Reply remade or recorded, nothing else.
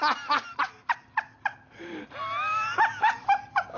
recorded